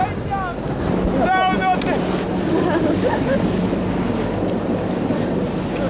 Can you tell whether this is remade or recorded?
recorded